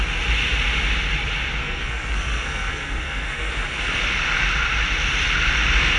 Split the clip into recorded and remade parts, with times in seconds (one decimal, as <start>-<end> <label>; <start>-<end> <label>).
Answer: 0.0-1.6 recorded; 1.6-3.5 remade; 3.5-6.0 recorded